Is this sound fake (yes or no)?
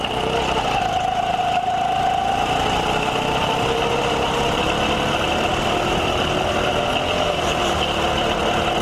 no